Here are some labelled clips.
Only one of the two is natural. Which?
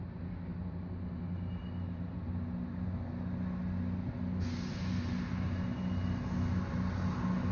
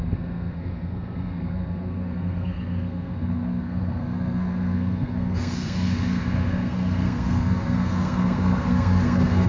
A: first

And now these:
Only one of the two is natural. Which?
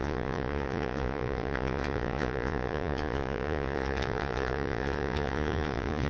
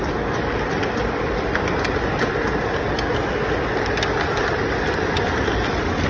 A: second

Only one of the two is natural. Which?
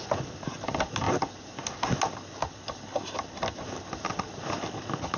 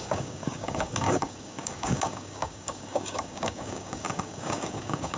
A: first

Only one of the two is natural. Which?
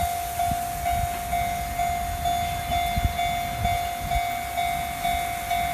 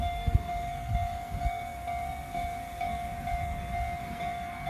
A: first